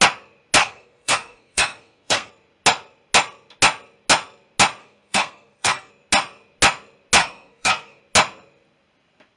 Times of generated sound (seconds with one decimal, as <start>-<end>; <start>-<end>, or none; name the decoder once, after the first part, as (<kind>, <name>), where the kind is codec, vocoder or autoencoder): 0.6-2.3 (codec, SNAC); 4.8-5.9; 7.2-8.0